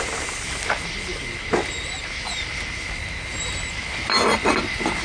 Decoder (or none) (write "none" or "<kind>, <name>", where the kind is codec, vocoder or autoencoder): none